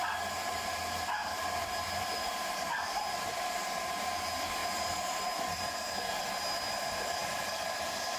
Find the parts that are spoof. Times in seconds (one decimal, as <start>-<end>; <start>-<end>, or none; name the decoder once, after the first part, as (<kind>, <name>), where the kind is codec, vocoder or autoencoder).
1.2-3.0 (vocoder, BigVGAN v2); 4.6-5.2; 7.2-8.2